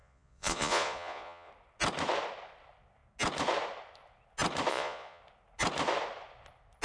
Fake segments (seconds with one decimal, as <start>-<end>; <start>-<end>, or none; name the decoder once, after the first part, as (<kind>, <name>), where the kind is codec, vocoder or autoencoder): 0.0-1.5 (vocoder, Vocos); 4.7-5.2